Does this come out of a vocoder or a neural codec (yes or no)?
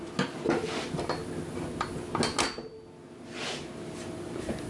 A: no